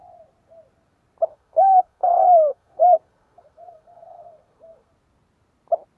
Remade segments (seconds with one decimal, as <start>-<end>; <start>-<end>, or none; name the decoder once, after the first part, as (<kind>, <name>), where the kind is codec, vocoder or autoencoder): 1.3-4.9 (codec, SNAC)